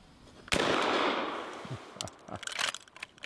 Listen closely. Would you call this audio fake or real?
real